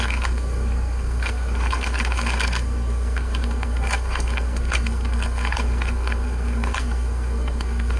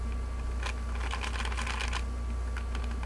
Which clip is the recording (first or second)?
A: second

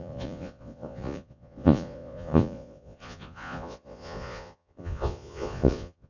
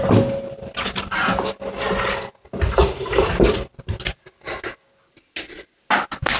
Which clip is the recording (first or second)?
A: second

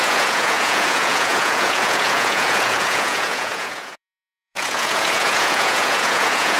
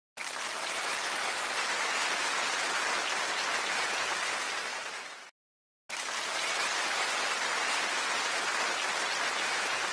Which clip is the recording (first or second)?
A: second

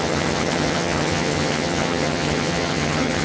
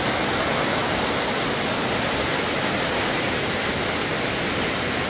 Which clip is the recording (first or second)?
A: second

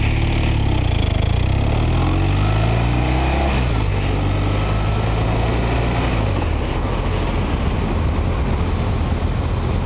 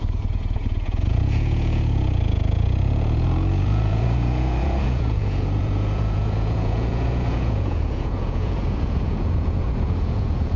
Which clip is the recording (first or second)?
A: first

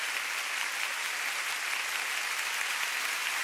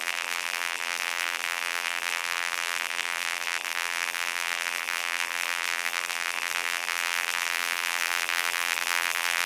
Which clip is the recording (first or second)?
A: first